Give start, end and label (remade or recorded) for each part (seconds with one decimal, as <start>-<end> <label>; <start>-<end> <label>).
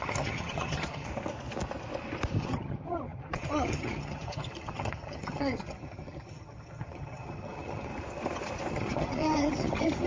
0.0-1.1 remade; 1.1-2.4 recorded; 2.4-7.9 remade; 7.9-8.7 recorded; 8.7-10.1 remade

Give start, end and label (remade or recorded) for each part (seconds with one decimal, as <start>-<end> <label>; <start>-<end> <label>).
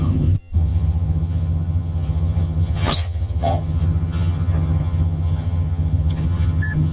0.0-6.9 remade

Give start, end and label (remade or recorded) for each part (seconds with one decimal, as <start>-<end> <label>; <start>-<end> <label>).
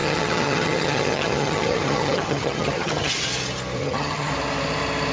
0.0-3.1 remade; 3.1-3.8 recorded; 3.8-4.3 remade; 4.3-5.1 recorded